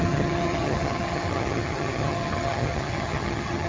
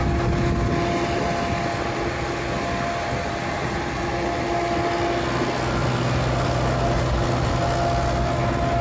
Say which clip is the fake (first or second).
first